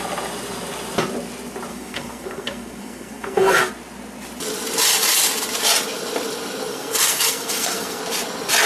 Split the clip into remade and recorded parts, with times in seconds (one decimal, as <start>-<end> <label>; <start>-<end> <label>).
0.0-1.7 recorded; 1.7-3.7 remade; 3.7-6.7 recorded; 6.7-8.0 remade; 8.0-8.7 recorded